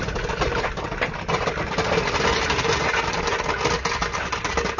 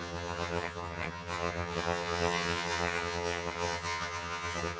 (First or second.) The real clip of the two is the first